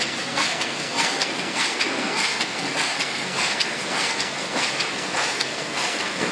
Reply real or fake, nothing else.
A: fake